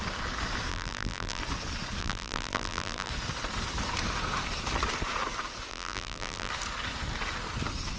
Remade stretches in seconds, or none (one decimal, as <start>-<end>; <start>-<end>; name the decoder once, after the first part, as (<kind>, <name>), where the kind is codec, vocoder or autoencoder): 0.7-1.4 (vocoder, BigVGAN v2); 2.0-3.1; 5.7-6.5